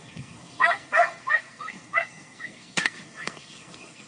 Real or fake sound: fake